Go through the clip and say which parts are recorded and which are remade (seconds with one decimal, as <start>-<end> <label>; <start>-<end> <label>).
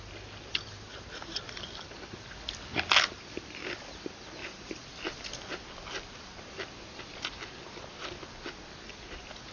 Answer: 0.0-9.5 recorded